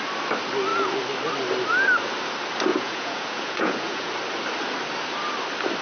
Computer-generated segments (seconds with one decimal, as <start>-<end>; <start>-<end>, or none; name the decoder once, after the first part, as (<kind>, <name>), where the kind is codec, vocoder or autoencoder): 2.7-4.1 (vocoder, Vocos)

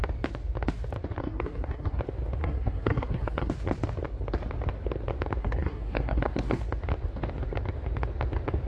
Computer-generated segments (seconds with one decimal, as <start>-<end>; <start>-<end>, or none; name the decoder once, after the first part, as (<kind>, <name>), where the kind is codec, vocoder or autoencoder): 1.2-2.0 (codec, SNAC); 2.4-3.5; 5.4-6.6

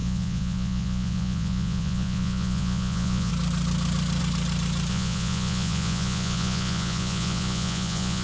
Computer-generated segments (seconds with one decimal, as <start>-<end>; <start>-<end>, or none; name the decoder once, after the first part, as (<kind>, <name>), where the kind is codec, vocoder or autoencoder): 0.0-3.3 (vocoder, Vocos); 4.9-8.2

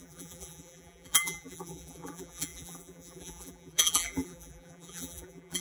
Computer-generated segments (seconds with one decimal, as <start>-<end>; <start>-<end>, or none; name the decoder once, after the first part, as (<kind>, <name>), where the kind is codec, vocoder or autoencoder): 0.0-5.6 (vocoder, BigVGAN v2)

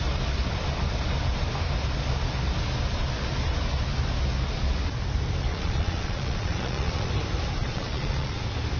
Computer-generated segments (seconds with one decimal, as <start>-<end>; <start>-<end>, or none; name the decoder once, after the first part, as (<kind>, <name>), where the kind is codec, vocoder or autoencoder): 5.4-7.1 (vocoder, Vocos); 7.6-8.4

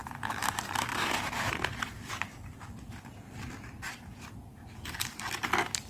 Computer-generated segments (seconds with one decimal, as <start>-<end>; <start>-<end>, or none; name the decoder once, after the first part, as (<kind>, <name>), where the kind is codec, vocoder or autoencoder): none